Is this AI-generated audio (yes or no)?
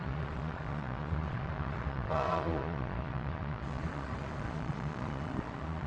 yes